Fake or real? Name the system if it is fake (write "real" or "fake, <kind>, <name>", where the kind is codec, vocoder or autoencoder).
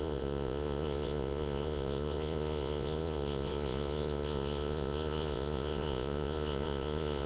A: fake, vocoder, Vocos